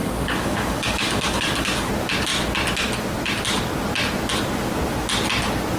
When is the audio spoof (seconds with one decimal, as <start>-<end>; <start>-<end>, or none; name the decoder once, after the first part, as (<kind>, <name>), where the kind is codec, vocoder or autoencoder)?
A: 0.0-1.9 (codec, DAC)